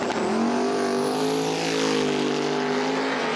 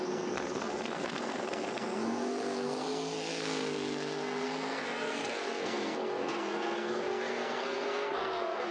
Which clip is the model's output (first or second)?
second